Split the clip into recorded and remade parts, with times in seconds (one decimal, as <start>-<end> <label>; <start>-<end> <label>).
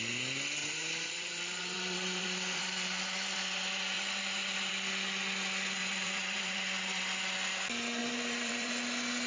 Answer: 0.0-0.6 recorded; 0.6-4.7 remade; 4.7-5.8 recorded; 5.8-7.0 remade; 7.0-8.0 recorded; 8.0-8.7 remade; 8.7-9.3 recorded